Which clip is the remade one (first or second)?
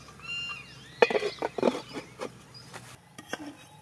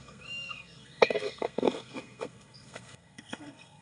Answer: second